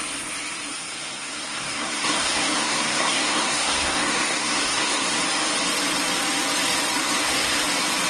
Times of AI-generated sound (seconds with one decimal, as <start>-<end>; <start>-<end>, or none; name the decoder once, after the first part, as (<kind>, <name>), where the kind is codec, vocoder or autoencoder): 0.7-5.2 (codec, SNAC); 7.0-7.6